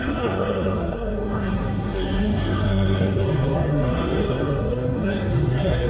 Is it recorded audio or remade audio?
remade